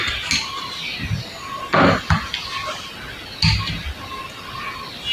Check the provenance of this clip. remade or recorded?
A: recorded